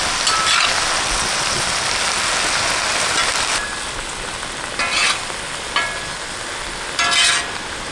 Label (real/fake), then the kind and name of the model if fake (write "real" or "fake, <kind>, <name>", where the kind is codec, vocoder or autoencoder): real